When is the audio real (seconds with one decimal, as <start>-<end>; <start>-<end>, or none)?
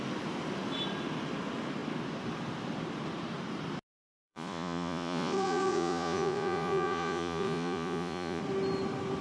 0.0-4.2; 8.4-9.2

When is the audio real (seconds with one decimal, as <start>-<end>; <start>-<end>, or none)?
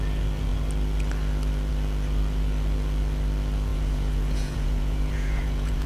0.0-3.7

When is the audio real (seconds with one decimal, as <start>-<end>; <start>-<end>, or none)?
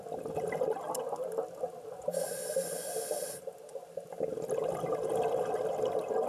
0.0-6.3